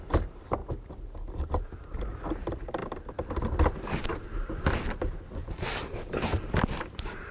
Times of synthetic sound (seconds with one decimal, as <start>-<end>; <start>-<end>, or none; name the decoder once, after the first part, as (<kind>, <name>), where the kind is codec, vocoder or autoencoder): 0.0-0.6 (vocoder, BigVGAN v2); 1.3-7.3